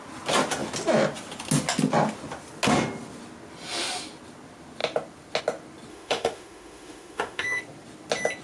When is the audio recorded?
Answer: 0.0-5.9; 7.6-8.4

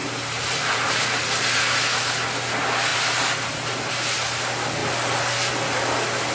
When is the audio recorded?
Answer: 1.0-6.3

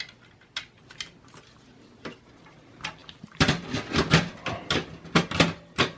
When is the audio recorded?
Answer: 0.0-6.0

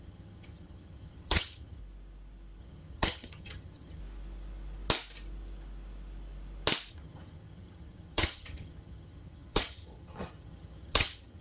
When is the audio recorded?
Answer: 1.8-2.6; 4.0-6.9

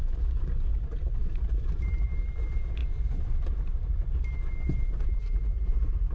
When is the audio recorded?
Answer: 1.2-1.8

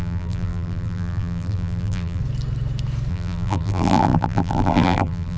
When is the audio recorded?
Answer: 2.2-3.1

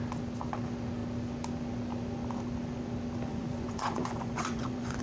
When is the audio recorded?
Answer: 0.0-3.3